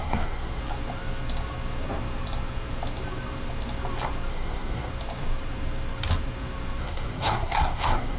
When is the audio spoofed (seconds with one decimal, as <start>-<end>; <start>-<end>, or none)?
0.0-0.6; 4.3-4.9; 6.8-8.2